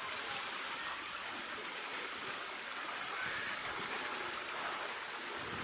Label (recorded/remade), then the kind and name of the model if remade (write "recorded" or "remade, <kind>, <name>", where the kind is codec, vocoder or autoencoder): recorded